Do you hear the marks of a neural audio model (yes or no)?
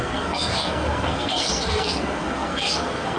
yes